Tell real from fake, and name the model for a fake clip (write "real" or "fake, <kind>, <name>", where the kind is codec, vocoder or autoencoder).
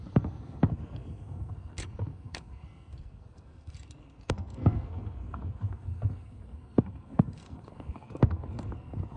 fake, codec, SNAC